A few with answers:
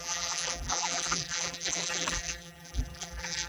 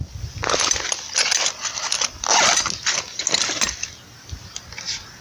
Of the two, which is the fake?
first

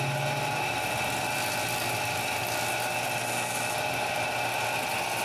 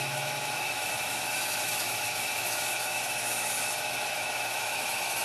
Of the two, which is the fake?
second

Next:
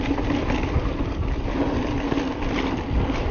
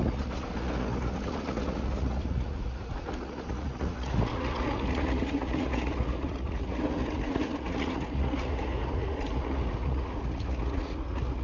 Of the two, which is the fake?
second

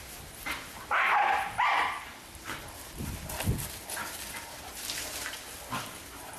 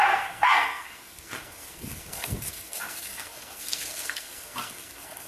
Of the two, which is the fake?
second